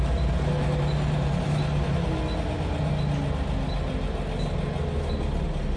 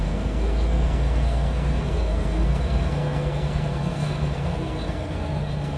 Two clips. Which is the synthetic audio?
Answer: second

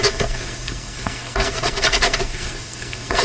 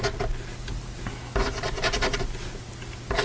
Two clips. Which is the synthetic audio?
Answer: first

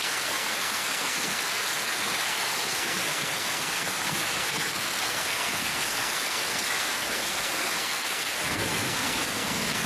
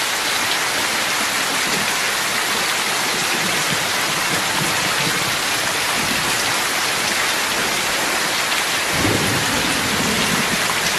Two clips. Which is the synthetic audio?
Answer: first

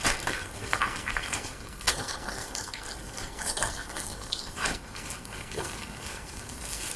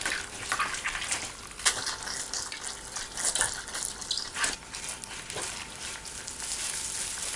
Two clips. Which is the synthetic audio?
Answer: first